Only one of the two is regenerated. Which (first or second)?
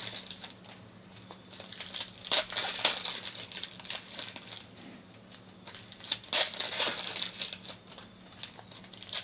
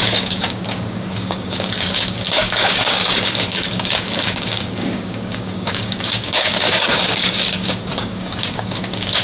second